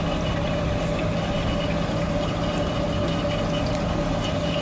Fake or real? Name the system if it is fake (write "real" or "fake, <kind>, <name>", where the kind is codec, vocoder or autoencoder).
real